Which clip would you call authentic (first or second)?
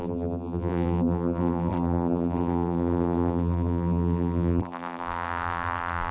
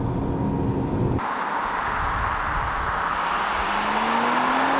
second